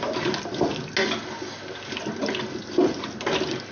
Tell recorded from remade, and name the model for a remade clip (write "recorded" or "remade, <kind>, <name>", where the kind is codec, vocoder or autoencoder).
recorded